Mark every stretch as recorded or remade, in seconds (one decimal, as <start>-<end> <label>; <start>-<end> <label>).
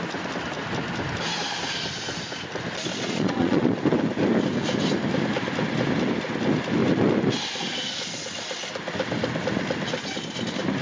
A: 0.0-2.9 recorded; 2.9-3.8 remade; 3.8-10.8 recorded